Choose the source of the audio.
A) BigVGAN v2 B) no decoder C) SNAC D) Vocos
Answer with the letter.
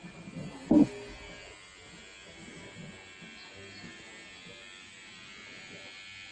B